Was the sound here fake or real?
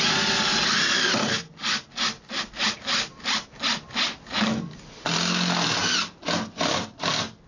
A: real